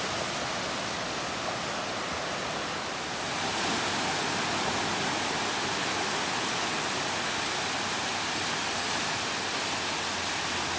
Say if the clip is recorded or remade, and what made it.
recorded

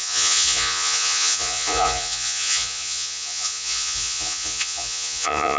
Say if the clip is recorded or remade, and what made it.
remade, vocoder, Vocos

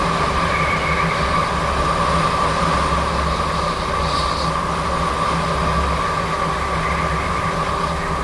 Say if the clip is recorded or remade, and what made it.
recorded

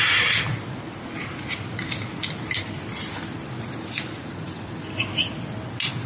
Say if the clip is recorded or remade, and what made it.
recorded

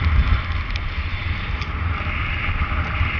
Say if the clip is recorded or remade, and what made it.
recorded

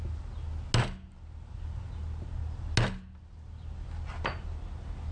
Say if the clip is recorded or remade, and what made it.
recorded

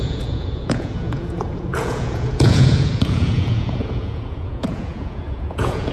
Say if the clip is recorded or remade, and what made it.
remade, vocoder, Vocos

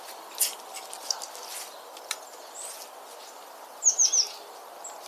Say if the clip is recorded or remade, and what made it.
recorded